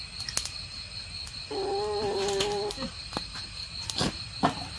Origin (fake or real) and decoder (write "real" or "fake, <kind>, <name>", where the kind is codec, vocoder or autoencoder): real